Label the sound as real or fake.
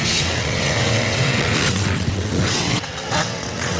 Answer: fake